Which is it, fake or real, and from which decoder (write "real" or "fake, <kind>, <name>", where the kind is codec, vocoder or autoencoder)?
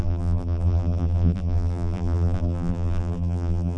fake, vocoder, BigVGAN v2